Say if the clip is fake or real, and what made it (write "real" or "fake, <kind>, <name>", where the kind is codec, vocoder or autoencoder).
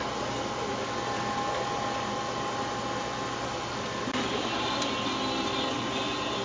real